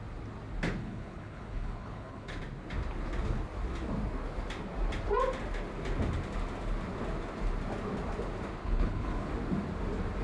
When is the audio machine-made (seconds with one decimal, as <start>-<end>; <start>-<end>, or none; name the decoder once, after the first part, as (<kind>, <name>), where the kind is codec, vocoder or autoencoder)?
0.8-2.4 (codec, HILCodec); 8.6-9.3